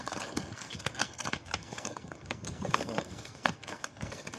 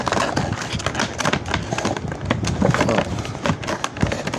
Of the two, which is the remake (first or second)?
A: first